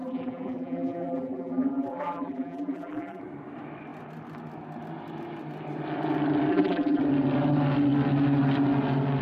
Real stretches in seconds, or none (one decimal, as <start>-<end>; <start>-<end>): 3.2-6.5; 7.0-9.2